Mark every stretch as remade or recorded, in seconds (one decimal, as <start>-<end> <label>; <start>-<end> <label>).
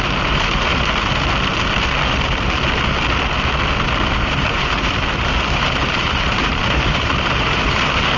0.0-0.7 remade; 0.7-4.2 recorded; 4.2-8.2 remade